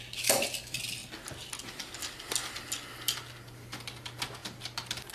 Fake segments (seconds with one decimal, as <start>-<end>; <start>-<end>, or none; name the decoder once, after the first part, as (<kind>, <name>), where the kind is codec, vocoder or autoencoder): none